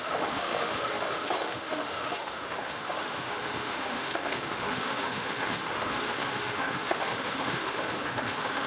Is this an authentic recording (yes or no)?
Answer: no